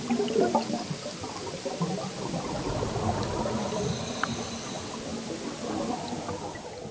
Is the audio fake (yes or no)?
no